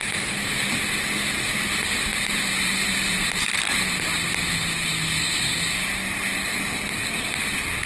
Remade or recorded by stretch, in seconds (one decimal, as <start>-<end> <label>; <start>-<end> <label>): 0.0-2.1 recorded; 2.1-4.3 remade; 4.3-7.9 recorded